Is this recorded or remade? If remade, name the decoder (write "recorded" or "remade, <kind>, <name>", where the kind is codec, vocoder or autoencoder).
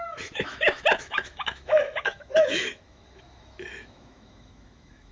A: remade, autoencoder, DAC-VAE